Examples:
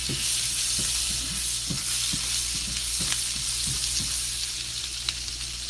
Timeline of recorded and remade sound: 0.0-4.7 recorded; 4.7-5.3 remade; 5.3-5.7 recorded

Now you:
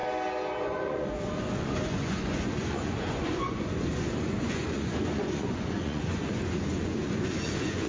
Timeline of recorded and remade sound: 0.0-0.6 recorded; 0.6-7.9 remade

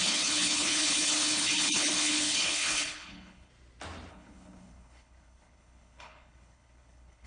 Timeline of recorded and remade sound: 0.0-3.5 remade; 3.5-4.1 recorded; 4.1-7.3 remade

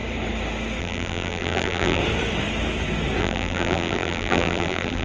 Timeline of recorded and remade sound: 0.0-0.8 recorded; 0.8-2.0 remade; 2.0-3.2 recorded; 3.2-5.0 remade